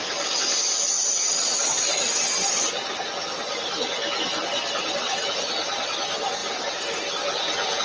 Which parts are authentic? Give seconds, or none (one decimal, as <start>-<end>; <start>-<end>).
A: 0.0-6.4; 6.9-7.8